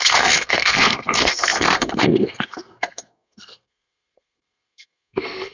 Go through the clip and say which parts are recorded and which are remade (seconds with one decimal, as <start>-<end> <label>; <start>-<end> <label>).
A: 0.0-5.5 remade